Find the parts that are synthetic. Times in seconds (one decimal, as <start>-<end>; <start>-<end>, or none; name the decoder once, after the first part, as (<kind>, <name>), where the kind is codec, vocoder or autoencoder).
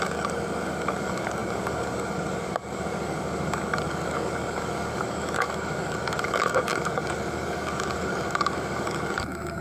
0.0-9.6 (codec, DAC)